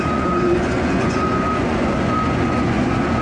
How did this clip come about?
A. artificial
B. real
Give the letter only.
A